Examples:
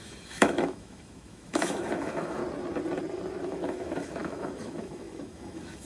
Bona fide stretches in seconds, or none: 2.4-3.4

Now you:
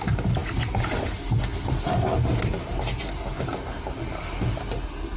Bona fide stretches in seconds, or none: 0.0-5.2